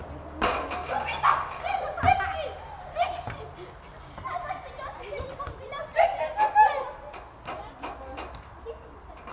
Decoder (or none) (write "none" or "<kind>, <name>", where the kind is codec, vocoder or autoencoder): none